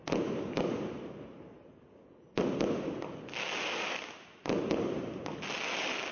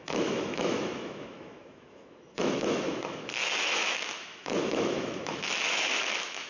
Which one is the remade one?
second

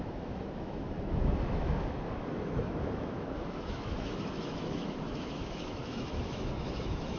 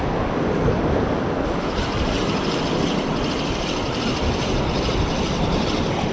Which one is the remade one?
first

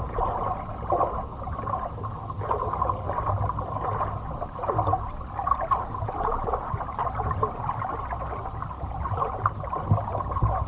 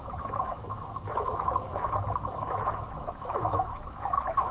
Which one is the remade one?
second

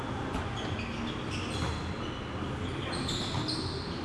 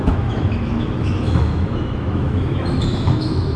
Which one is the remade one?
second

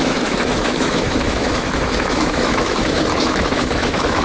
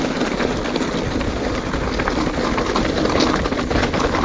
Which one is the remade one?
first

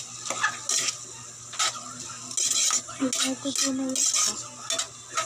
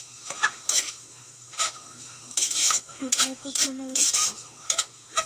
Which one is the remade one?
second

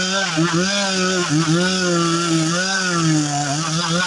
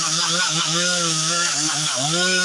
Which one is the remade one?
second